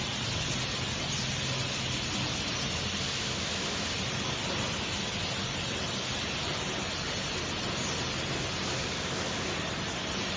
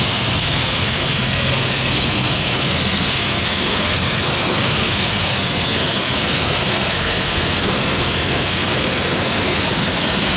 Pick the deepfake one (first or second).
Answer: second